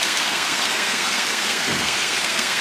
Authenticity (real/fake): fake